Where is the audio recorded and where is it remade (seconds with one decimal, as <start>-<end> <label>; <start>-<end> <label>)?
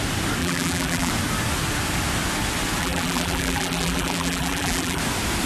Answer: 0.0-0.4 recorded; 0.4-1.1 remade; 1.1-2.8 recorded; 2.8-5.0 remade; 5.0-5.5 recorded